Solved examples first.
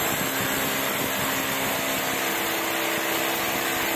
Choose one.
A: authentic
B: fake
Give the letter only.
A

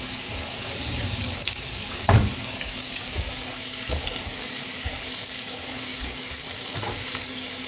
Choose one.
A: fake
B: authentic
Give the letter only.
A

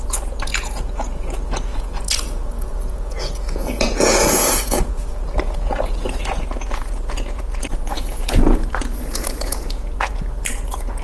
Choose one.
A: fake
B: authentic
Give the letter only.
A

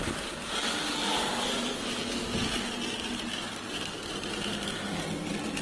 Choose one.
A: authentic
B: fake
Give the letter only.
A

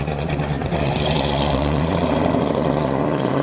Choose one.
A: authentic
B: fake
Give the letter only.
B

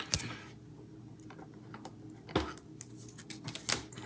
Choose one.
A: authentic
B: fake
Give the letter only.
A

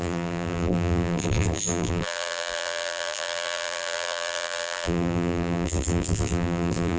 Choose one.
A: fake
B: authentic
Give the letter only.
A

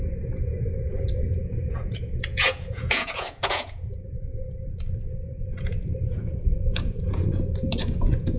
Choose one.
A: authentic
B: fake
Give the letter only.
B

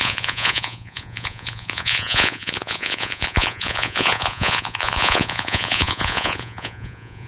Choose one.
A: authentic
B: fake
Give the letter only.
B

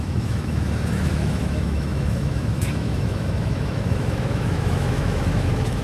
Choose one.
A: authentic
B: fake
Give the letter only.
B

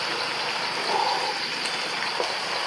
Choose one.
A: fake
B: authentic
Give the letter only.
B